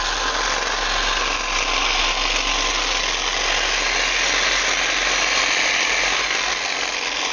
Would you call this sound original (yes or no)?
yes